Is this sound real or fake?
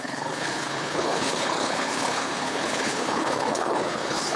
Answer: fake